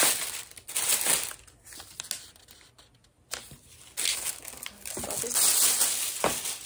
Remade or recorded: recorded